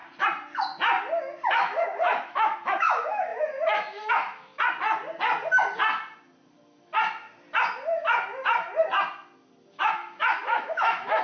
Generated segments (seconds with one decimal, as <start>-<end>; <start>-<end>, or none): 1.5-4.5; 9.7-11.2